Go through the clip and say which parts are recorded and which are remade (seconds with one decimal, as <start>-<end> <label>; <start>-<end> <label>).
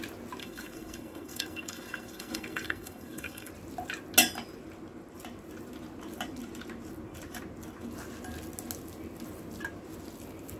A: 0.0-0.4 recorded; 0.4-3.5 remade; 3.5-10.6 recorded